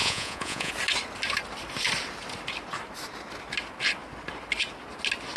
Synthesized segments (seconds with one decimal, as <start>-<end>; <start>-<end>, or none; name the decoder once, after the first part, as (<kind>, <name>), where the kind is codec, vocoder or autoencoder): 0.0-0.7 (vocoder, Vocos)